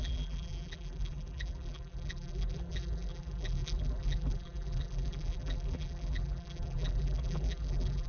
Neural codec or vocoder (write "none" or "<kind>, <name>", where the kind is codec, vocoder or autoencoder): vocoder, BigVGAN v2